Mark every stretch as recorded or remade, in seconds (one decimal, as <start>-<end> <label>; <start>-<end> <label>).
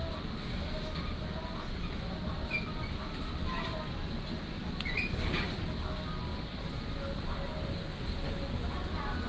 0.0-9.3 recorded